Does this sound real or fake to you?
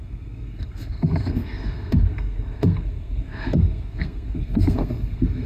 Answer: fake